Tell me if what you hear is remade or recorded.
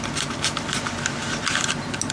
recorded